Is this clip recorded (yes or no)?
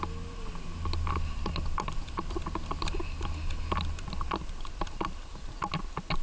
yes